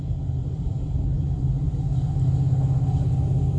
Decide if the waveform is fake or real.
real